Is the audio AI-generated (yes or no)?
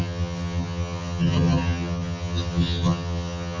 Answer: yes